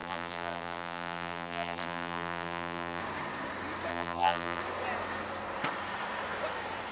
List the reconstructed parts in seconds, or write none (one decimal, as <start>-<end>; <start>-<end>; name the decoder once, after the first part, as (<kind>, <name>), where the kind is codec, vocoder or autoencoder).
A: 0.0-3.0 (vocoder, BigVGAN v2); 3.9-4.6